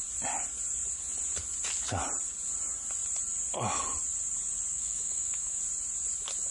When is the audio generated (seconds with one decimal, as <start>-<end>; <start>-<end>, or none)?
4.7-5.6